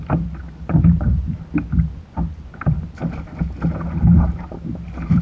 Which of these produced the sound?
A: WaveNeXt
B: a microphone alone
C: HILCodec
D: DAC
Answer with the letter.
B